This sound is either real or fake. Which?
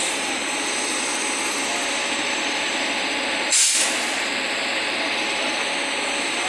real